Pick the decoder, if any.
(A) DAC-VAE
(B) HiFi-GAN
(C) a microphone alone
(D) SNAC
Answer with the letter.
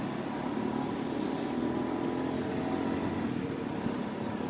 C